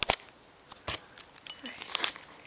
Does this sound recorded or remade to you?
recorded